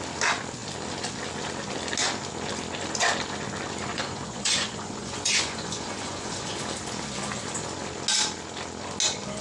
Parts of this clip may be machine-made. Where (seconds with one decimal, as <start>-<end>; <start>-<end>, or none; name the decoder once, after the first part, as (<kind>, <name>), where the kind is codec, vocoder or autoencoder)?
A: 3.9-6.6 (vocoder, Vocos)